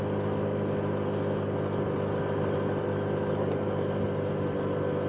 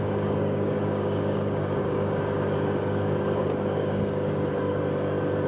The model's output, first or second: second